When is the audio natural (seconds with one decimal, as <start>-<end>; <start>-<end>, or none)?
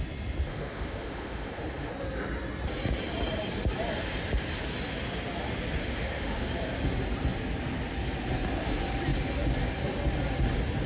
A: 0.0-0.5; 1.9-5.8; 6.5-10.9